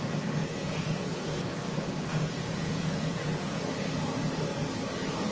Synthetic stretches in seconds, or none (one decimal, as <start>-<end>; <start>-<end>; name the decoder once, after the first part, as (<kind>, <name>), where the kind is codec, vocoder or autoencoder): 0.4-1.4 (vocoder, Vocos); 2.1-3.6